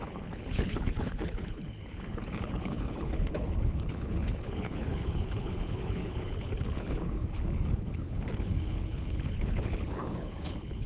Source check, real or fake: fake